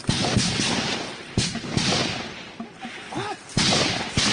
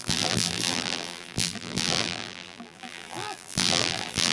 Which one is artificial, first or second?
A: second